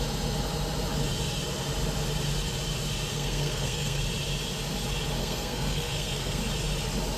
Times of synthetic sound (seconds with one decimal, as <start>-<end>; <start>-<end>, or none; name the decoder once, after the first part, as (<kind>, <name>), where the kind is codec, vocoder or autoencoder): 3.1-4.0 (codec, SNAC); 5.2-6.4